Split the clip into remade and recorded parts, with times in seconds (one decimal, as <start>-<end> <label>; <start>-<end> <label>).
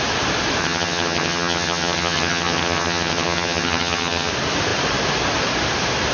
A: 0.0-0.6 recorded; 0.6-4.3 remade; 4.3-6.1 recorded